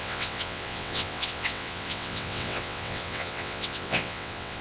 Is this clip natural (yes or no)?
no